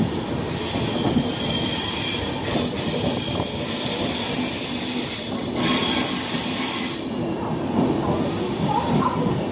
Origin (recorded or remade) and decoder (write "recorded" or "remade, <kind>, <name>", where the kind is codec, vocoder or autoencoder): recorded